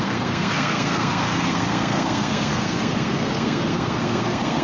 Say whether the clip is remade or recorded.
remade